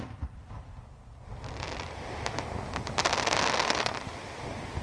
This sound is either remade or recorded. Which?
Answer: recorded